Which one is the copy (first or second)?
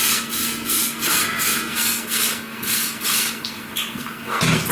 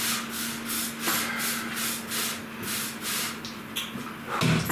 first